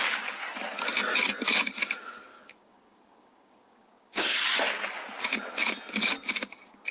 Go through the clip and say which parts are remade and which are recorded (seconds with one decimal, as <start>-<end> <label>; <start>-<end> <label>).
0.0-2.3 recorded; 2.3-4.4 remade; 4.4-6.9 recorded